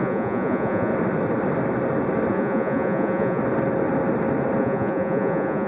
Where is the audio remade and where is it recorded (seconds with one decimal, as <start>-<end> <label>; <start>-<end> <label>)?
0.0-0.9 remade; 0.9-2.3 recorded; 2.3-3.4 remade; 3.4-4.6 recorded; 4.6-5.7 remade